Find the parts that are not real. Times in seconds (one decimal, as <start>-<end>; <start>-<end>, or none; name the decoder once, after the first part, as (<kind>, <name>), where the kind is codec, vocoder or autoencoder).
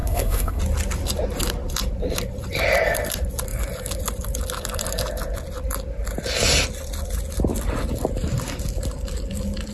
0.0-0.6 (codec, SNAC)